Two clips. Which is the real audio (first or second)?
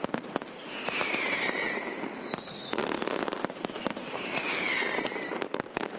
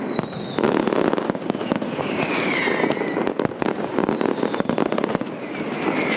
second